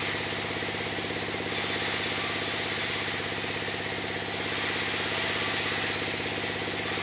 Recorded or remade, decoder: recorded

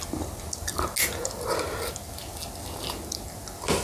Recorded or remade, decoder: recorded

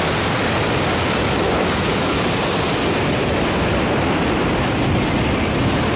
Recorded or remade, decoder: recorded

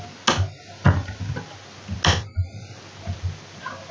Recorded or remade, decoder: recorded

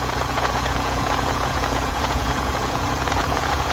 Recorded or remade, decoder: remade, vocoder, Vocos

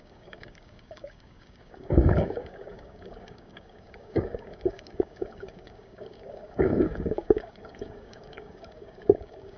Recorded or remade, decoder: remade, codec, DAC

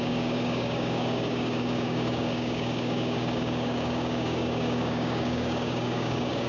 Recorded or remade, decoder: remade, codec, DAC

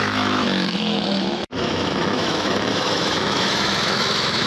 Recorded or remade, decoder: remade, autoencoder, DAC-VAE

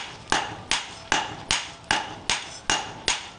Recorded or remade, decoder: recorded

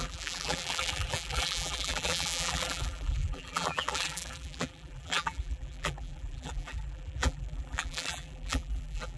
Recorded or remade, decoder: remade, vocoder, BigVGAN v2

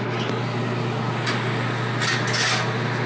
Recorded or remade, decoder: recorded